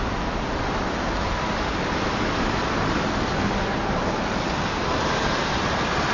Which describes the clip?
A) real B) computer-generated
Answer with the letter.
A